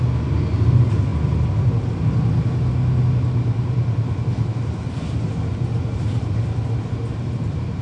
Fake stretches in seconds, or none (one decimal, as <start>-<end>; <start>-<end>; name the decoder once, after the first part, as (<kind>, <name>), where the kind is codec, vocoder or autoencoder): none